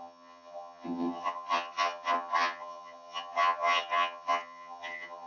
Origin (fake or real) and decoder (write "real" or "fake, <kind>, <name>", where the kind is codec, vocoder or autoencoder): fake, vocoder, HiFi-GAN